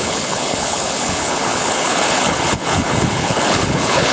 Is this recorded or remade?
remade